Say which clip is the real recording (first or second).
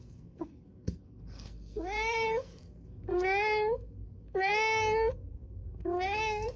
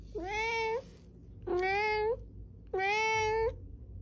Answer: second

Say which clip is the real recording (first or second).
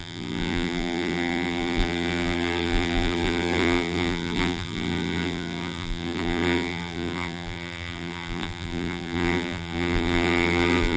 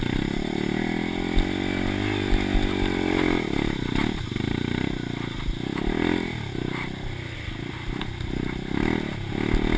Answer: second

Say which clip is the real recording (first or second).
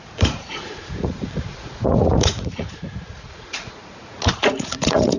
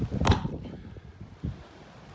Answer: second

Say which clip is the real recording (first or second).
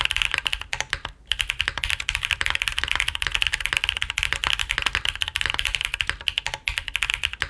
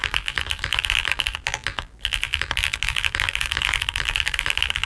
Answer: first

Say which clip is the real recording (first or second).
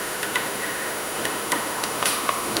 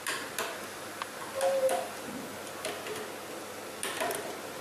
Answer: second